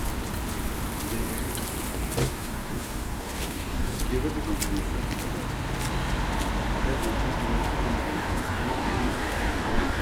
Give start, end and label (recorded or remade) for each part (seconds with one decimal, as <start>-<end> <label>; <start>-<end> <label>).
0.0-2.2 recorded; 2.2-4.0 remade; 4.0-8.0 recorded; 8.0-10.0 remade

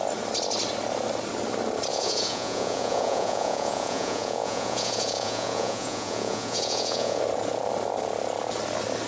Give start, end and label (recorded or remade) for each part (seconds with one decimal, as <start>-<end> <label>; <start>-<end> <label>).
0.0-1.9 recorded; 1.9-7.2 remade; 7.2-9.1 recorded

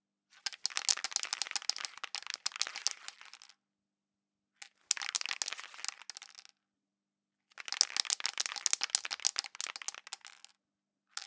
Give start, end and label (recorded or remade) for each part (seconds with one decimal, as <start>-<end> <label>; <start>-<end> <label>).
0.0-11.3 recorded

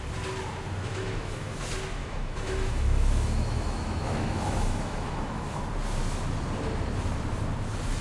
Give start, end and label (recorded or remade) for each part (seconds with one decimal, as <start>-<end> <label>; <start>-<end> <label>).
0.0-0.9 recorded; 0.9-1.6 remade; 1.6-2.0 recorded; 2.0-5.6 remade; 5.6-8.0 recorded

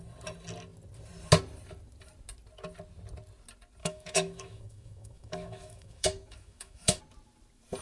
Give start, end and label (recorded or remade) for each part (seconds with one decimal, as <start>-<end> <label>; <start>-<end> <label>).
0.0-3.8 recorded; 3.8-7.0 remade; 7.0-7.8 recorded

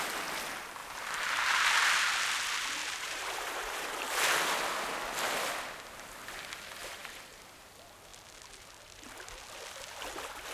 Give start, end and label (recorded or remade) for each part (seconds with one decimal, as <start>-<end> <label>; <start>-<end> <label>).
0.0-0.8 recorded; 0.8-2.0 remade; 2.0-2.8 recorded; 2.8-4.2 remade; 4.2-6.8 recorded; 6.8-7.6 remade; 7.6-10.5 recorded